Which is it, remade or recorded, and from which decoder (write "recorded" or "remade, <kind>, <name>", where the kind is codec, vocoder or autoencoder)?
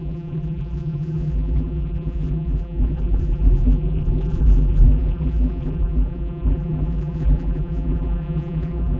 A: remade, vocoder, BigVGAN v2